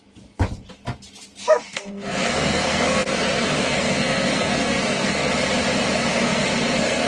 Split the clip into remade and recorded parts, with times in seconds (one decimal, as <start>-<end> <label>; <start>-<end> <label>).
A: 0.0-1.4 recorded; 1.4-5.3 remade; 5.3-6.1 recorded; 6.1-7.1 remade